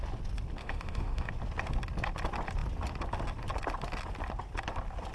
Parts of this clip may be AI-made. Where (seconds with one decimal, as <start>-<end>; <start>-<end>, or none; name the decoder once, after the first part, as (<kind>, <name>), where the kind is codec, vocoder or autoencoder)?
0.6-1.3 (autoencoder, DAC-VAE)